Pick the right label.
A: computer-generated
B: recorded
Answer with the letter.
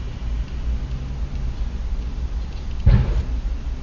B